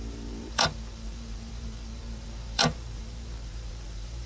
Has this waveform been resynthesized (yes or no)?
yes